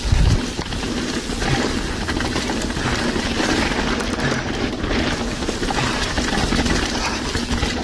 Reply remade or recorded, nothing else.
recorded